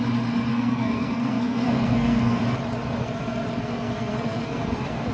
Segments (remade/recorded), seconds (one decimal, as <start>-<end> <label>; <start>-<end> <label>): 0.0-0.5 recorded; 0.5-2.4 remade; 2.4-3.0 recorded; 3.0-5.1 remade